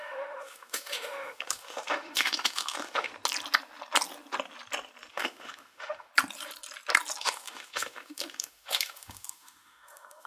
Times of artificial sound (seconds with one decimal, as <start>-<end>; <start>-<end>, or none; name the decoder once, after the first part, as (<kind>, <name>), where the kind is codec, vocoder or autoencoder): 0.0-3.1 (autoencoder, DAC-VAE); 5.1-6.1; 7.2-10.3